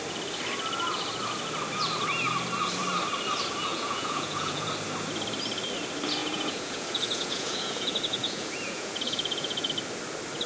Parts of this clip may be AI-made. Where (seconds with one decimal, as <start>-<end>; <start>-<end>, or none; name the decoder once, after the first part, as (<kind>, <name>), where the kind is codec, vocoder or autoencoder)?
3.7-4.7 (vocoder, Vocos); 6.2-9.7